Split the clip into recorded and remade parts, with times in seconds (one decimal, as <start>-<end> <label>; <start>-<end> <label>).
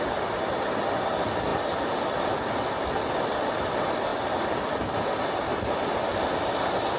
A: 0.0-7.0 recorded